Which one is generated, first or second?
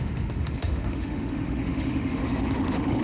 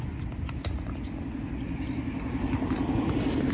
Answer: first